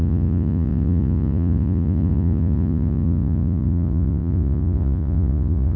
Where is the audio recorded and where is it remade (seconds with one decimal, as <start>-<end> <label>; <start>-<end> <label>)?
0.0-5.8 remade